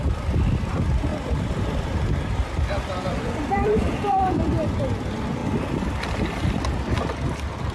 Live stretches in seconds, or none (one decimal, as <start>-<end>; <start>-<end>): 0.0-1.1; 4.4-7.7